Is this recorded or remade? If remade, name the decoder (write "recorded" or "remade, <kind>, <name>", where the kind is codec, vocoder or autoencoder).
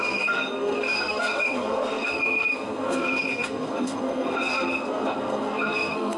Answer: remade, codec, SNAC